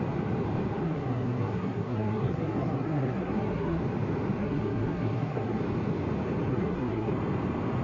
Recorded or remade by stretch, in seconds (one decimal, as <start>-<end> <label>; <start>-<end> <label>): 0.0-0.8 recorded; 0.8-3.8 remade; 3.8-4.4 recorded; 4.4-5.6 remade; 5.6-6.5 recorded; 6.5-7.1 remade; 7.1-7.8 recorded